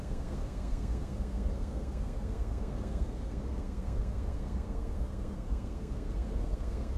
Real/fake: fake